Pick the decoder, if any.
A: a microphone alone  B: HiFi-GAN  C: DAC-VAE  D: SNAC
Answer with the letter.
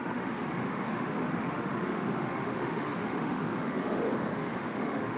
C